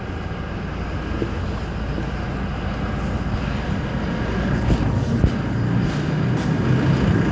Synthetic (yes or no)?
no